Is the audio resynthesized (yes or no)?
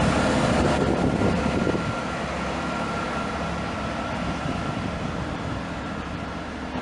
yes